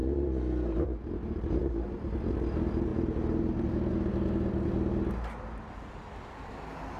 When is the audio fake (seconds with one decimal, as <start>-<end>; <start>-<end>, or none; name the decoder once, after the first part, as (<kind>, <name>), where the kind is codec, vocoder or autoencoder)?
none